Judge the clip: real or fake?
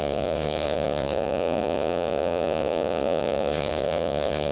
fake